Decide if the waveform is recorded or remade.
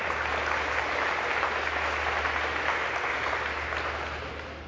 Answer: recorded